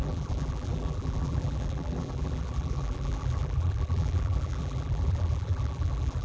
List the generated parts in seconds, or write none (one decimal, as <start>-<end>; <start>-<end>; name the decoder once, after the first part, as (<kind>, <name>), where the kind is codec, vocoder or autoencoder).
0.0-6.2 (vocoder, BigVGAN v2)